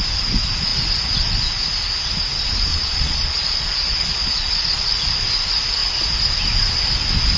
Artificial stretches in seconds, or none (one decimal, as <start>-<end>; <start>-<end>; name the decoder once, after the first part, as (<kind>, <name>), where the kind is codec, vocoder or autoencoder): 2.7-4.9 (vocoder, Vocos)